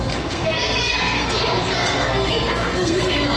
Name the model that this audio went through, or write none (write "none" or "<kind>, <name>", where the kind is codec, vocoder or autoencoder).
codec, SNAC